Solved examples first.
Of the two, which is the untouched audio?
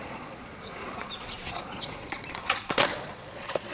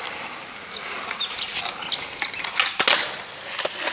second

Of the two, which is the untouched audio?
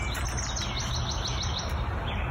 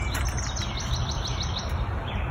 first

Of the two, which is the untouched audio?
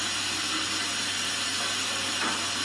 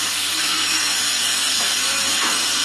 first